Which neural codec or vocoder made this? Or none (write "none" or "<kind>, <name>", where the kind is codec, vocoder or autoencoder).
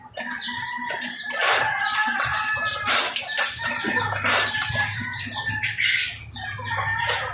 vocoder, BigVGAN v2